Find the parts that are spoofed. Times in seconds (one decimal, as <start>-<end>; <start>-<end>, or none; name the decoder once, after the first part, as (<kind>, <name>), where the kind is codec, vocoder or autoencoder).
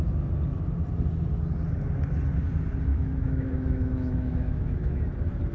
2.9-5.0 (autoencoder, DAC-VAE)